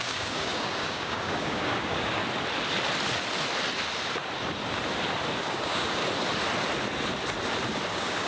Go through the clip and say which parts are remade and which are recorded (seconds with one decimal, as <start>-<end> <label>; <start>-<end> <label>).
0.0-2.2 remade; 2.2-5.4 recorded; 5.4-6.0 remade; 6.0-7.9 recorded; 7.9-8.3 remade